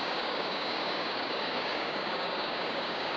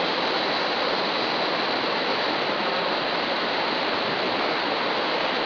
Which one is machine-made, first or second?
first